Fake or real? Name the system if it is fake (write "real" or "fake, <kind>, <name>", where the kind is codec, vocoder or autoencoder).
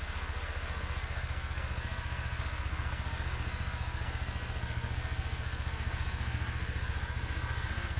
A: fake, codec, SNAC